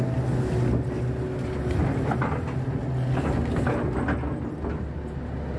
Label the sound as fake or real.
real